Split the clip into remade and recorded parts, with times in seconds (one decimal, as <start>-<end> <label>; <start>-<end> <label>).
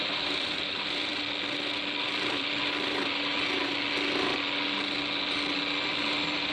0.0-1.1 remade; 1.1-2.0 recorded; 2.0-3.3 remade; 3.3-5.9 recorded; 5.9-6.5 remade